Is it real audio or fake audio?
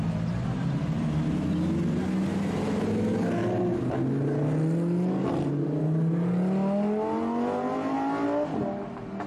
real